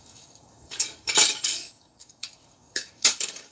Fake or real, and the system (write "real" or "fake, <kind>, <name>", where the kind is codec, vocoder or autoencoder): fake, codec, DAC